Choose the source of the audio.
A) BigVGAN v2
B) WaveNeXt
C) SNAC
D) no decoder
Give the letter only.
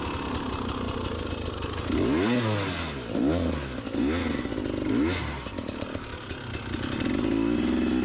D